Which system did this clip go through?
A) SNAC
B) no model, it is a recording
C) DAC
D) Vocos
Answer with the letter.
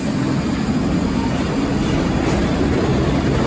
B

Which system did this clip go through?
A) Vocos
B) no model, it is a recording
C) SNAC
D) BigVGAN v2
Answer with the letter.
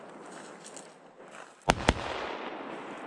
B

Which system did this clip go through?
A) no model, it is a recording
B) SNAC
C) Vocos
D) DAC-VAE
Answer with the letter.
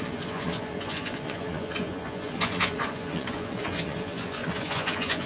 C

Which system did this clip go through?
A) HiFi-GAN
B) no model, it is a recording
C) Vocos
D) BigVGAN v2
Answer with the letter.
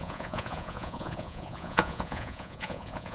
C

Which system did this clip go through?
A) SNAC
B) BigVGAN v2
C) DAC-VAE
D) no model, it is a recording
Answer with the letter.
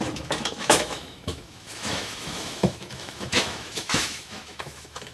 C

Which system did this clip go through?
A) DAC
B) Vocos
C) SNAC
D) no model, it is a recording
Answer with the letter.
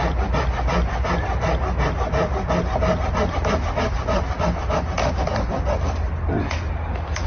D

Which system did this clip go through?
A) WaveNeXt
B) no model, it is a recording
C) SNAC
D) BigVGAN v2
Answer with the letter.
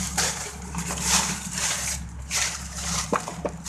D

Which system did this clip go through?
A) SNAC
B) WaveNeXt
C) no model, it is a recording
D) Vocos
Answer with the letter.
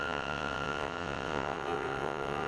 B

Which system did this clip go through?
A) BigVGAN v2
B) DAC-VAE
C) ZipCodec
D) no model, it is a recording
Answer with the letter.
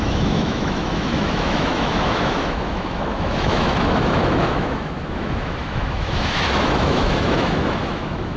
B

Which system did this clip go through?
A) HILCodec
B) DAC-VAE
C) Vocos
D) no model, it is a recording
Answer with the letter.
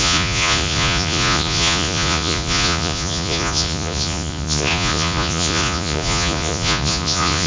C